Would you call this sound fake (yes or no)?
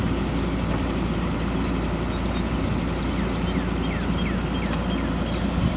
no